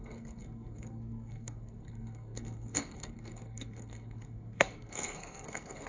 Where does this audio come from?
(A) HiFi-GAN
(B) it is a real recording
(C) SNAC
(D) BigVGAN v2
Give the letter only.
C